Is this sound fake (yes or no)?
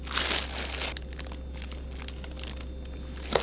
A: no